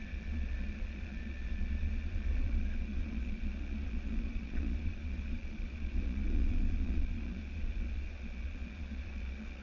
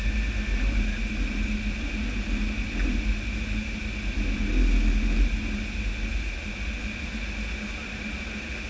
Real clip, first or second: second